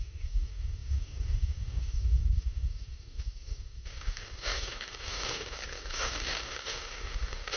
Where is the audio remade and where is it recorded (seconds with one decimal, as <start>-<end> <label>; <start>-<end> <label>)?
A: 0.0-7.6 remade